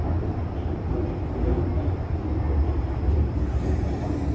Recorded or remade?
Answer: recorded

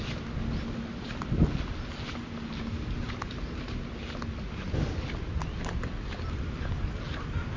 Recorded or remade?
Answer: recorded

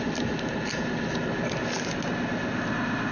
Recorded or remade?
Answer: recorded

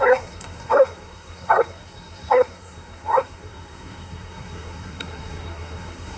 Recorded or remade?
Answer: remade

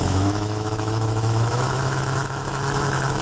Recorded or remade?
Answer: remade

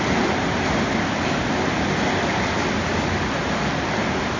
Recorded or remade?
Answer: recorded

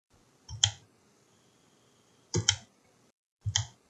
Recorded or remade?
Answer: recorded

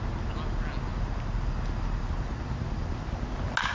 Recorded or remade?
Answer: recorded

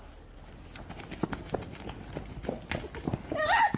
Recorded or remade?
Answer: recorded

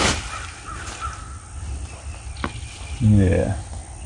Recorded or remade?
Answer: recorded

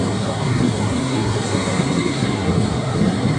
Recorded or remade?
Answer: remade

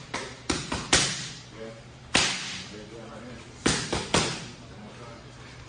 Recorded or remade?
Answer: recorded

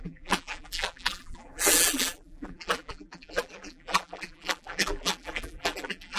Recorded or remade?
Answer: remade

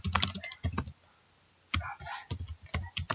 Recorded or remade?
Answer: recorded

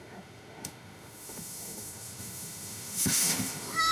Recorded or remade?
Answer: remade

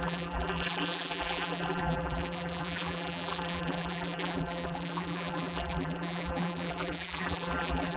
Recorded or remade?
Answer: remade